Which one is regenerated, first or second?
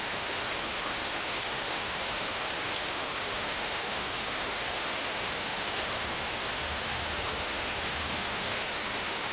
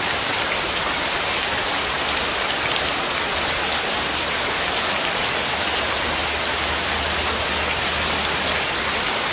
first